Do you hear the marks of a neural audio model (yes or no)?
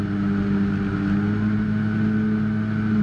no